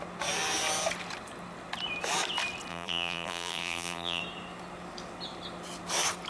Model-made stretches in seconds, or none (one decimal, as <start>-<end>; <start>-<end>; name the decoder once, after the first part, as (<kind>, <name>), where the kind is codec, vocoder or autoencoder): 2.7-4.2 (vocoder, BigVGAN v2)